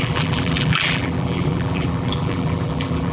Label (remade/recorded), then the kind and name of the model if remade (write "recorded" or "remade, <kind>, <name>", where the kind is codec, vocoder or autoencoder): remade, vocoder, BigVGAN v2